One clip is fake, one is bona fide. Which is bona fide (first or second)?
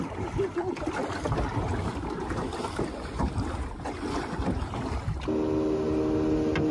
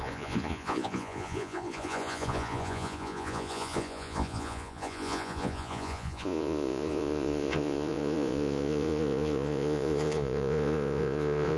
first